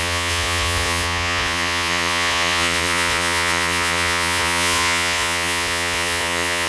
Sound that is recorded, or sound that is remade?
remade